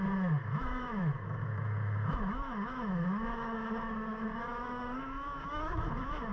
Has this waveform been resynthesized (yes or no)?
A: yes